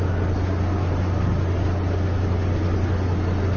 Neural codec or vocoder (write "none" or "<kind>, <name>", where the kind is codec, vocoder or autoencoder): none